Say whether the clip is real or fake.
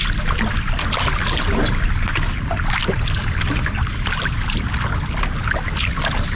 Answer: real